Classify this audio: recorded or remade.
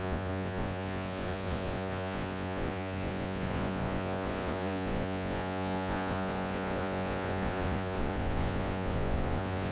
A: remade